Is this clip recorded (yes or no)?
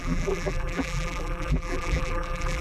no